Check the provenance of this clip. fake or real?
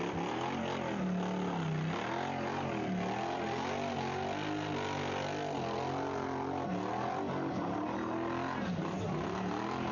real